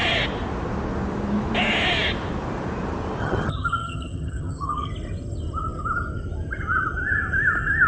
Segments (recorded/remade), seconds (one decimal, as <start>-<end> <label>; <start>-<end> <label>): 0.0-3.2 recorded; 3.2-4.9 remade; 4.9-7.9 recorded